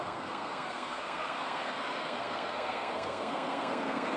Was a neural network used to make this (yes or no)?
yes